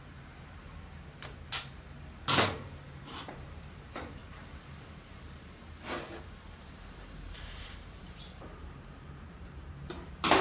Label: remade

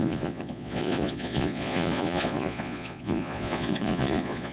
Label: remade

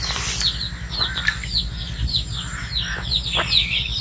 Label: recorded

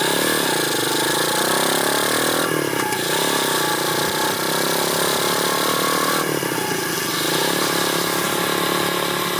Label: recorded